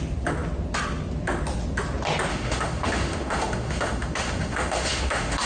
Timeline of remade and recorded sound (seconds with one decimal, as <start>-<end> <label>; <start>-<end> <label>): 0.0-2.3 recorded; 2.3-5.5 remade